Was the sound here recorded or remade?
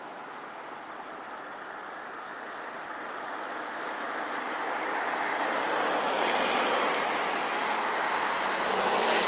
recorded